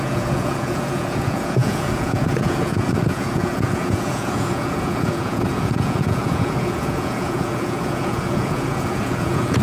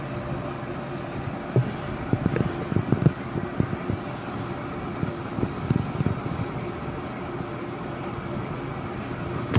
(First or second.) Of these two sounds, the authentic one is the second